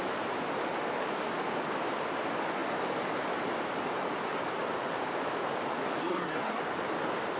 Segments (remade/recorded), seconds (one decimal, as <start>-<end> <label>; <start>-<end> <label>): 0.0-6.0 recorded; 6.0-6.6 remade; 6.6-7.4 recorded